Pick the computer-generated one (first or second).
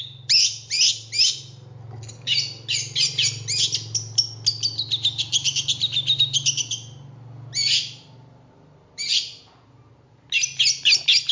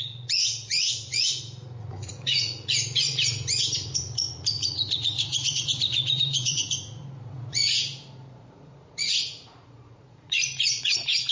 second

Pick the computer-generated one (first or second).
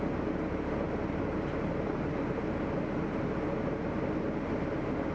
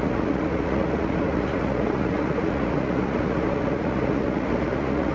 second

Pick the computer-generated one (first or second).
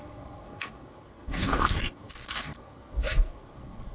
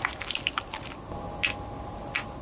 first